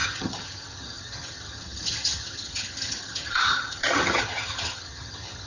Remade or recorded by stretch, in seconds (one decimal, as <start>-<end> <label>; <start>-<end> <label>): 0.0-5.5 remade

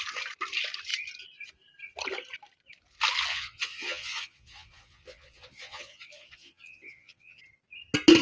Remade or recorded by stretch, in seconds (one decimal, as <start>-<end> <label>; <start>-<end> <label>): 0.0-3.3 recorded; 3.3-7.4 remade; 7.4-8.2 recorded

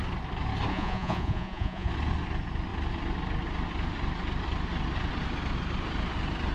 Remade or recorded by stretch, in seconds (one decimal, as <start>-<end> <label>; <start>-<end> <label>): 0.0-0.7 recorded; 0.7-1.9 remade; 1.9-6.5 recorded

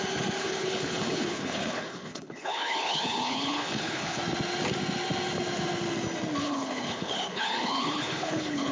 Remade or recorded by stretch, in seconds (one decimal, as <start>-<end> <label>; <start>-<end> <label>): 0.0-0.4 recorded; 0.4-4.2 remade; 4.2-6.4 recorded; 6.4-8.7 remade

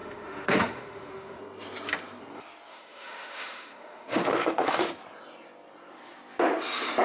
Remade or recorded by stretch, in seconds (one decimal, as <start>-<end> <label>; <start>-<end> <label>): 0.0-1.4 remade; 1.4-2.7 recorded; 2.7-4.9 remade; 4.9-7.0 recorded

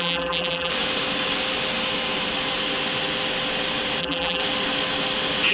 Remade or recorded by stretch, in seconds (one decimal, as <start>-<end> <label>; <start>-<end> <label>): 0.0-0.7 remade; 0.7-4.0 recorded; 4.0-4.4 remade; 4.4-5.5 recorded

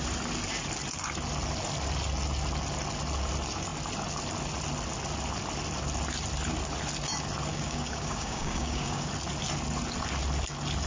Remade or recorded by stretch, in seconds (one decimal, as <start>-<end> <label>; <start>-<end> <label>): 0.0-7.5 recorded; 7.5-9.1 remade; 9.1-10.9 recorded

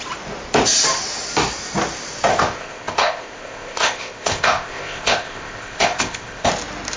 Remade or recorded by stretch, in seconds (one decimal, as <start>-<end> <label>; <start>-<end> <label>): 0.0-2.3 recorded; 2.3-6.5 remade; 6.5-7.0 recorded